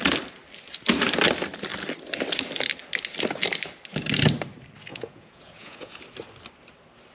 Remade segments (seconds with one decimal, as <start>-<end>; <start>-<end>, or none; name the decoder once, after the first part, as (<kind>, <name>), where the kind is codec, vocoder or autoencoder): 4.9-6.0 (vocoder, Vocos)